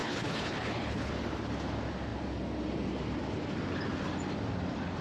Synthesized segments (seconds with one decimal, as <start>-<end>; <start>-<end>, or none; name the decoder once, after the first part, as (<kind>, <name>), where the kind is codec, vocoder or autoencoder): 0.0-1.1 (codec, HILCodec)